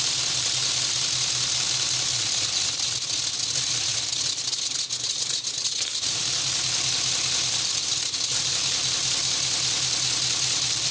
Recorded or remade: recorded